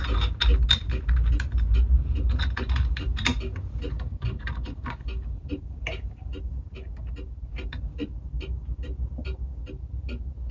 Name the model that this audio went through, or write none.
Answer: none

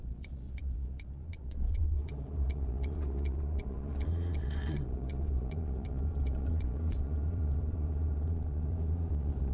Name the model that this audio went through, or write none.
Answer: vocoder, Vocos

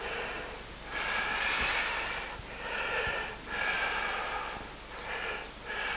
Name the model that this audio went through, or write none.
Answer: none